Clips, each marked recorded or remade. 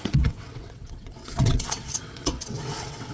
remade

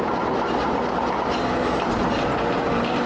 recorded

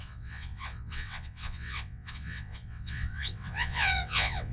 remade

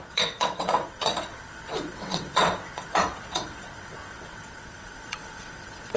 remade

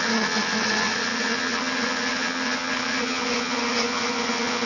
remade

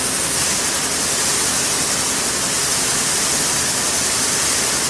recorded